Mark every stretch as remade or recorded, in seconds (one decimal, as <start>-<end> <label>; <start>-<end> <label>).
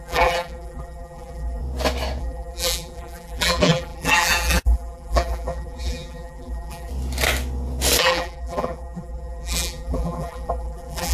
0.0-1.6 remade; 1.6-2.2 recorded; 2.2-6.9 remade; 6.9-8.0 recorded; 8.0-11.1 remade